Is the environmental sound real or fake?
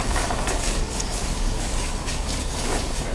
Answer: fake